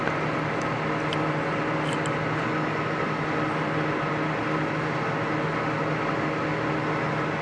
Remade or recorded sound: recorded